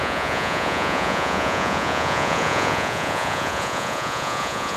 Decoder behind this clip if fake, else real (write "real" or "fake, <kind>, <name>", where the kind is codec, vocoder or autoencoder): fake, vocoder, Vocos